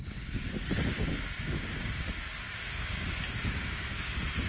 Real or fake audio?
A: fake